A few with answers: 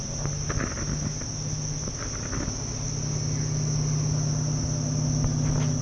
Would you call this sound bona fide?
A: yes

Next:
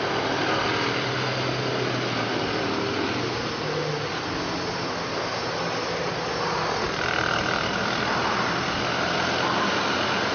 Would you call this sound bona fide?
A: yes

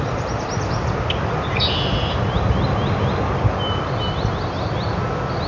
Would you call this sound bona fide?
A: yes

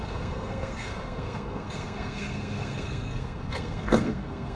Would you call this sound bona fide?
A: no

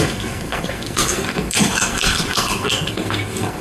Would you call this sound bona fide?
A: no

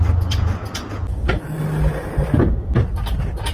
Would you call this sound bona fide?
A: yes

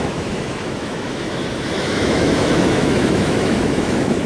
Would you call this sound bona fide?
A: no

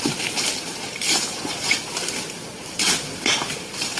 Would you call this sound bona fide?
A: no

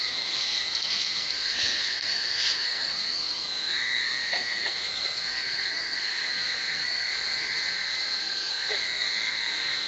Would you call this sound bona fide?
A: no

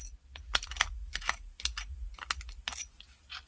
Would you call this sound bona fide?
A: yes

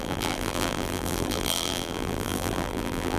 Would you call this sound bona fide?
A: no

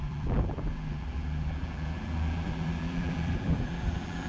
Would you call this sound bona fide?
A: no